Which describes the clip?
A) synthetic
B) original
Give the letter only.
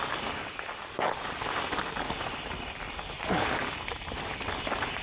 B